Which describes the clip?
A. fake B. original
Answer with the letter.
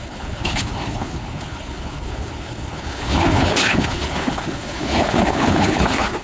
A